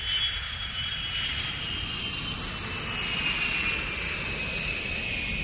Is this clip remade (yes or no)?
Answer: no